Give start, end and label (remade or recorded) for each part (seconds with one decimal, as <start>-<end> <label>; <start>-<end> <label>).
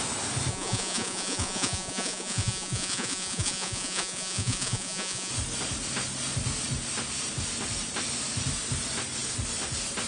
0.0-0.5 recorded; 0.5-5.3 remade; 5.3-10.1 recorded